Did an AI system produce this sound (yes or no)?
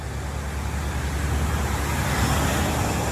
no